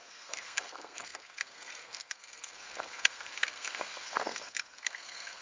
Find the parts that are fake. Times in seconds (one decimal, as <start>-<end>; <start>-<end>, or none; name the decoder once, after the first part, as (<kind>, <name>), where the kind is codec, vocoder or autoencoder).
0.0-5.4 (codec, SNAC)